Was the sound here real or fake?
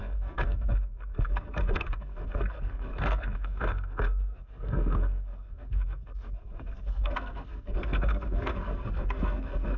fake